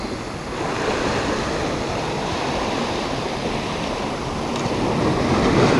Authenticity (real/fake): real